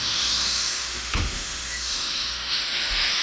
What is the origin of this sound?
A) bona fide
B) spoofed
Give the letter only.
B